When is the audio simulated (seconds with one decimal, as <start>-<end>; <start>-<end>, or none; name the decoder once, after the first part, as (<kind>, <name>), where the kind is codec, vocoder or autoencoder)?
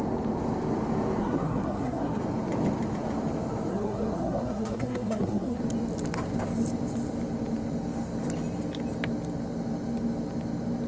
1.2-2.2 (codec, SNAC); 3.7-5.6